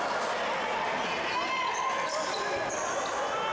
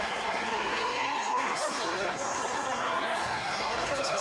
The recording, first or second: first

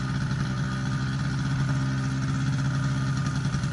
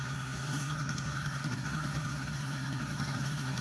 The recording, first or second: first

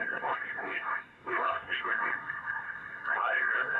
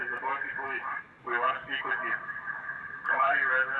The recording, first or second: second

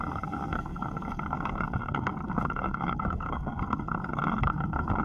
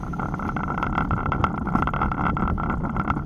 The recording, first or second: second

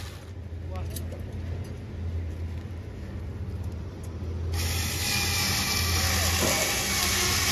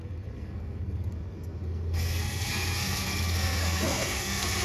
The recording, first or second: first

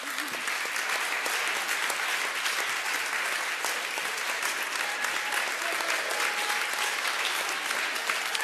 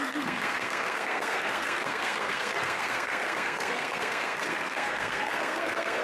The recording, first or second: first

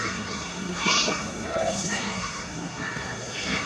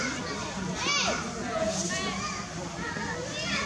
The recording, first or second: second